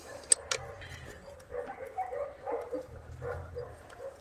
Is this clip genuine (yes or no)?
yes